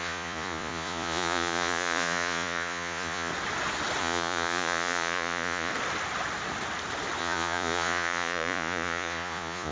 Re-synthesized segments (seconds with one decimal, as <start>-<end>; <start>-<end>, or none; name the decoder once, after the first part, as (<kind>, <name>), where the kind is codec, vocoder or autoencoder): 0.0-3.3 (vocoder, Vocos); 4.0-5.7; 7.2-9.7